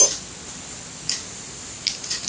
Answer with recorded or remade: recorded